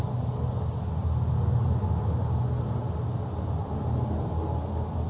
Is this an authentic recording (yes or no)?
yes